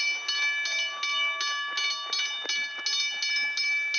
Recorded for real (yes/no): yes